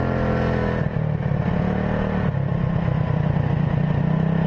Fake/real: real